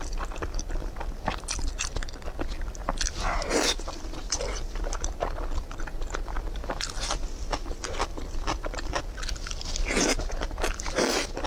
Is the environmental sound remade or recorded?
recorded